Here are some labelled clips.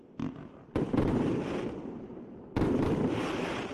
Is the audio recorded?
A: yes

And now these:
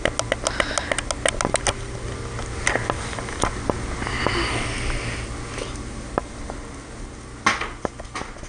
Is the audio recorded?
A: yes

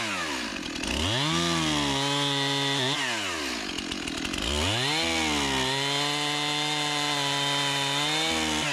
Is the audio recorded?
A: yes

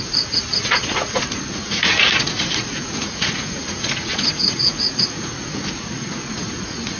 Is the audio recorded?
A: no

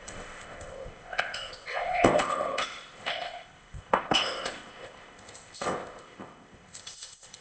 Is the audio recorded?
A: no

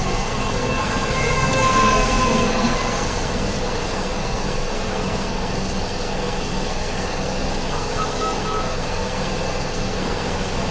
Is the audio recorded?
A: no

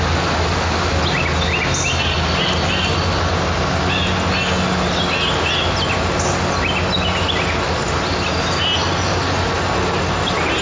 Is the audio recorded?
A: yes